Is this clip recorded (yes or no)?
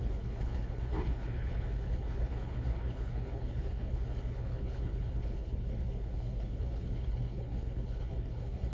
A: no